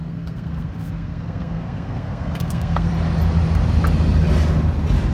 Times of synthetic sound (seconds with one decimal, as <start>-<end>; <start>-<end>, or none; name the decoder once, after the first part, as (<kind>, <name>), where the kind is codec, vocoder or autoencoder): 0.0-2.9 (codec, SNAC)